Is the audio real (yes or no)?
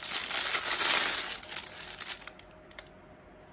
yes